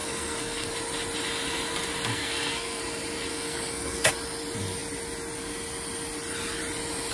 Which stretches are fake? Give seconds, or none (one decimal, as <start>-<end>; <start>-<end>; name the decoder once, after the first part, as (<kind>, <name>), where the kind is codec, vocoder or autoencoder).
0.0-0.7 (codec, SNAC); 2.1-2.8; 3.3-4.1